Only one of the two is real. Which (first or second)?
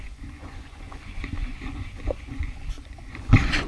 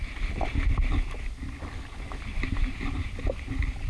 second